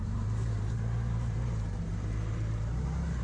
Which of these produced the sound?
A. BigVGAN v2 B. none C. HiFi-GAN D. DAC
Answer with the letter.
A